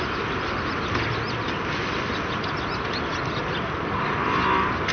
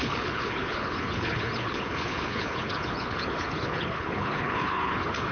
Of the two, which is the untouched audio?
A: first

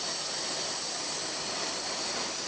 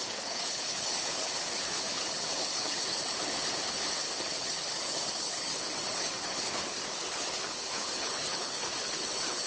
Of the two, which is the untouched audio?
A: first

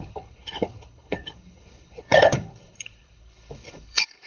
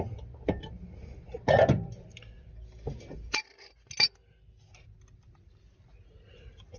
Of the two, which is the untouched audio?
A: second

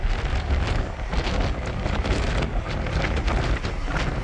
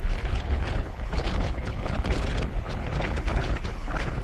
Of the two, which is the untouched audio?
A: first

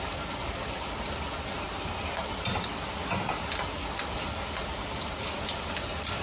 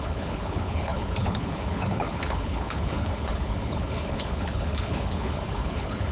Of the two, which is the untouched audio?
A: first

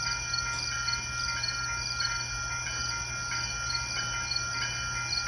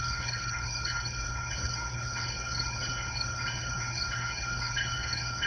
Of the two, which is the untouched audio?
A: first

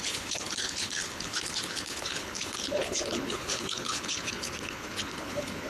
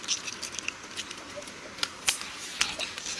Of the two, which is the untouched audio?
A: second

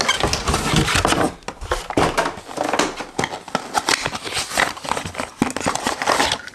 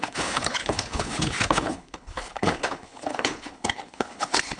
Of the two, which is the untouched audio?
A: first